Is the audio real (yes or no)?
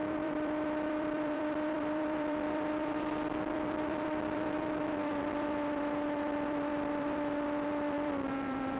no